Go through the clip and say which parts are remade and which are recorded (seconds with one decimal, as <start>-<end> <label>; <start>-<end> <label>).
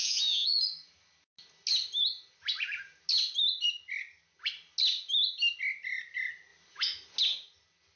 0.0-0.6 remade; 0.6-8.0 recorded